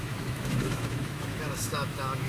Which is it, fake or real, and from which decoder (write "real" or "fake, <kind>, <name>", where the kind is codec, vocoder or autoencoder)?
fake, autoencoder, DAC-VAE